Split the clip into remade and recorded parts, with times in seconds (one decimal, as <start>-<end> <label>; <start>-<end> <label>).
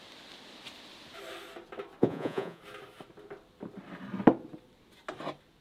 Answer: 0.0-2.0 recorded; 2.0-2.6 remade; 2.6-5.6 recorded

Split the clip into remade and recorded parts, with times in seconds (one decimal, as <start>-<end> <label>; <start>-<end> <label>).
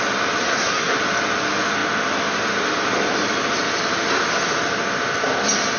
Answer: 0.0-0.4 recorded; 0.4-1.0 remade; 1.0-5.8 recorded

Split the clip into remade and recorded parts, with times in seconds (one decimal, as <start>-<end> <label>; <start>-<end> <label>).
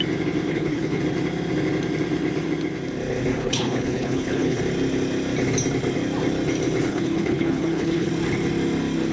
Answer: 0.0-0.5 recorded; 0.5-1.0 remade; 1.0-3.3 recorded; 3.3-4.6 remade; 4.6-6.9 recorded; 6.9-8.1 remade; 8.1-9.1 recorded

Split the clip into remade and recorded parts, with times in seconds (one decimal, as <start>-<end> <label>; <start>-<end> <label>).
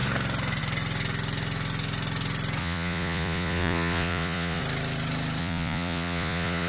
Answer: 0.0-2.6 recorded; 2.6-4.6 remade; 4.6-5.4 recorded; 5.4-6.7 remade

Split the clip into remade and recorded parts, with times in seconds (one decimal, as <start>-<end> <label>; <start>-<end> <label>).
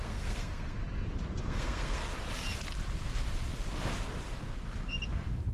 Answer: 0.0-0.8 remade; 0.8-1.4 recorded; 1.4-2.0 remade; 2.0-5.5 recorded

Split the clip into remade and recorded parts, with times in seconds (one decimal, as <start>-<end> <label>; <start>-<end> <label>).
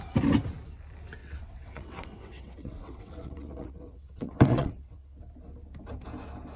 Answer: 0.0-1.2 recorded; 1.2-5.2 remade; 5.2-6.6 recorded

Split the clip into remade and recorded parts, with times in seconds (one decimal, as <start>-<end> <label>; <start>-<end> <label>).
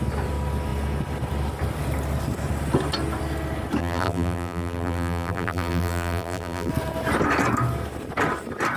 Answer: 0.0-3.8 recorded; 3.8-6.7 remade; 6.7-8.8 recorded